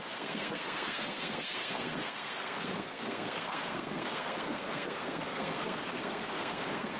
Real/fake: fake